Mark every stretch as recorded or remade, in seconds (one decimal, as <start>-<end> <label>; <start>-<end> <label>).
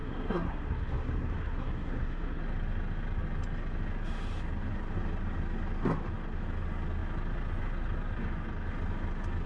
0.0-2.4 remade; 2.4-9.5 recorded